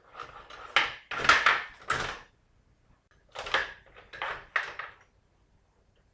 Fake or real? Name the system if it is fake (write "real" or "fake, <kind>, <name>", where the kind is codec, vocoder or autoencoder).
real